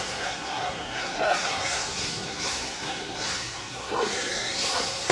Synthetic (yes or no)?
yes